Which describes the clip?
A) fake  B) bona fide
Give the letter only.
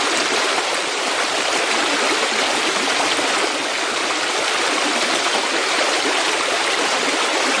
B